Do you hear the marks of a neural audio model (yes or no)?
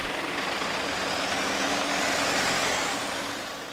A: no